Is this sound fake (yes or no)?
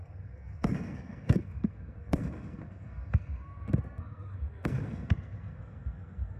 yes